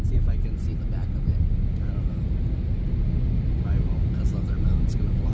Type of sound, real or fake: real